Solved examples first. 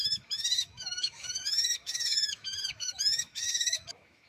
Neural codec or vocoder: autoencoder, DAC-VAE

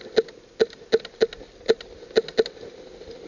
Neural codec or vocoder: none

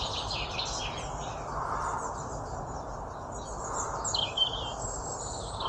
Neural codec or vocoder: none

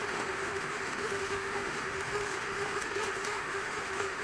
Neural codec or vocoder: autoencoder, DAC-VAE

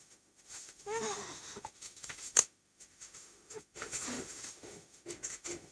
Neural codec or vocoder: autoencoder, DAC-VAE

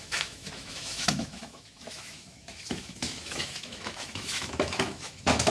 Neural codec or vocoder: autoencoder, DAC-VAE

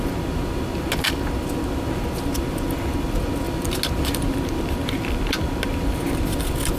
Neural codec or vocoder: none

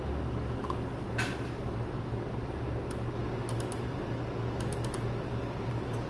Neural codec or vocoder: none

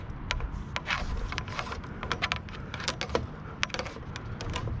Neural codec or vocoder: none